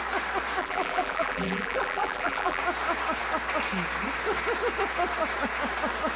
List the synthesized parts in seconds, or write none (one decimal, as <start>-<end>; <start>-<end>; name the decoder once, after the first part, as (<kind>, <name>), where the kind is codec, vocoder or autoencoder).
0.6-2.6 (vocoder, BigVGAN v2)